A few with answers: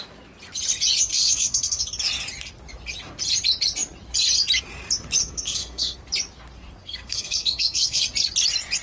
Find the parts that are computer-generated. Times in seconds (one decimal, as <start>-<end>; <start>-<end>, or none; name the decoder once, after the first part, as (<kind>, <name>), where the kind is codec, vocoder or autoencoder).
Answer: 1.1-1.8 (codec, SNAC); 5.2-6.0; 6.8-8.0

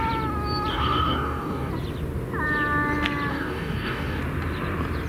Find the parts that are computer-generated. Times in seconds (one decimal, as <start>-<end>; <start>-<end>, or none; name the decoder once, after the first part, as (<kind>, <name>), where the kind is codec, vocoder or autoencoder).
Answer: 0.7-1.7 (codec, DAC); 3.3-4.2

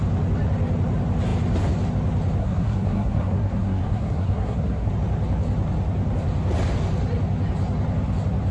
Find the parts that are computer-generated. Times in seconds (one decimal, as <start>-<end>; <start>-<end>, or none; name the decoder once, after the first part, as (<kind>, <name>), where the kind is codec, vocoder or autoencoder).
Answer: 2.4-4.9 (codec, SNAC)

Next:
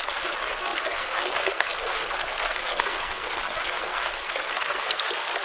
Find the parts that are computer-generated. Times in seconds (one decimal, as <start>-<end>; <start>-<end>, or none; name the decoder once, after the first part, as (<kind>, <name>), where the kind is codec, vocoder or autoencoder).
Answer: 0.0-5.4 (codec, SNAC)